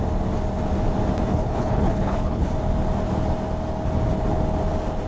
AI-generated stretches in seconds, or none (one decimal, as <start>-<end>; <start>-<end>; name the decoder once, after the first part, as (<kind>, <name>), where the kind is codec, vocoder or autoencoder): 1.3-2.6 (codec, HILCodec)